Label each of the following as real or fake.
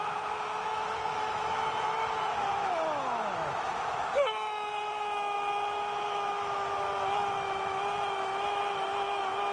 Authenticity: fake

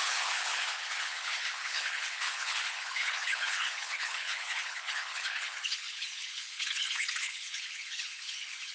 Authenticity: fake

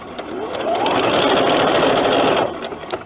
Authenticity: real